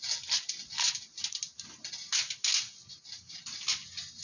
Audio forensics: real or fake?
real